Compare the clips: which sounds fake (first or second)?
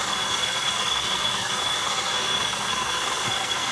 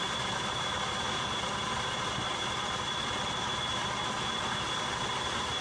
first